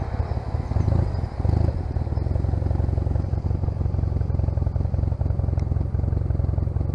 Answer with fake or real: real